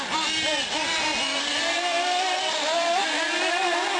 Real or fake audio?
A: fake